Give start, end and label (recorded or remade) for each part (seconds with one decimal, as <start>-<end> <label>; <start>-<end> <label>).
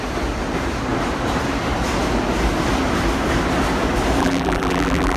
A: 0.0-4.2 recorded; 4.2-5.2 remade